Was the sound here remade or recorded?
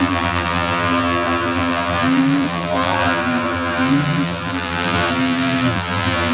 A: remade